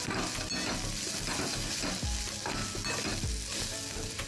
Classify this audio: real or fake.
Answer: real